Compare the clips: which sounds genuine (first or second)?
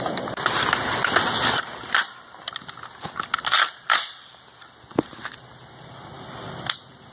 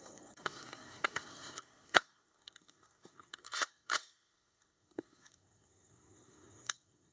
first